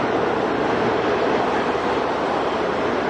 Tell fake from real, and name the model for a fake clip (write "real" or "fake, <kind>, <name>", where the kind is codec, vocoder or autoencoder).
real